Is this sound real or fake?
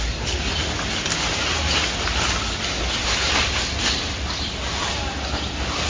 real